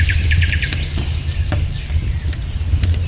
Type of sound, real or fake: fake